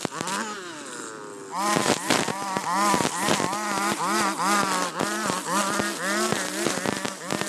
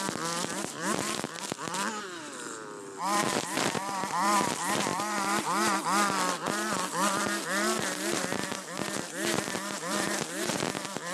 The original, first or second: first